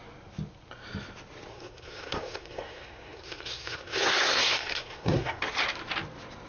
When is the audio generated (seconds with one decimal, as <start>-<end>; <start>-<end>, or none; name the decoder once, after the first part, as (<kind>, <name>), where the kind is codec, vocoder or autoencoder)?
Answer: 1.5-5.4 (codec, SNAC)